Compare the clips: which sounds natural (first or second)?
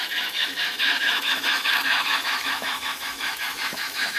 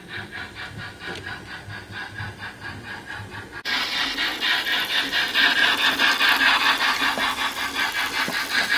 second